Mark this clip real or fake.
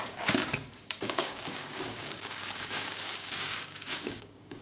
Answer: fake